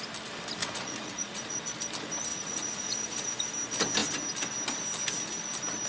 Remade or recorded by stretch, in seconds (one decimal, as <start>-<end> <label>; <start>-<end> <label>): 0.0-0.6 recorded; 0.6-1.6 remade; 1.6-2.3 recorded; 2.3-3.3 remade; 3.3-5.9 recorded